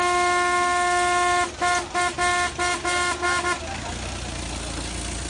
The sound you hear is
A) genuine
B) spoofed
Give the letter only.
A